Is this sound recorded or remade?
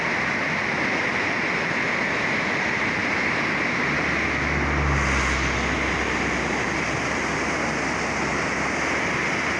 recorded